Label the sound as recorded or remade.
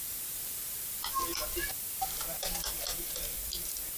recorded